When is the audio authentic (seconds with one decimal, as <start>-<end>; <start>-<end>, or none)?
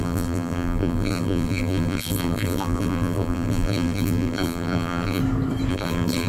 5.2-5.7